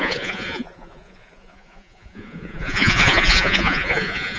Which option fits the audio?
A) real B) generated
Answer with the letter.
B